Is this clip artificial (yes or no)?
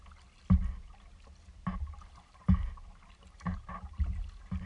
no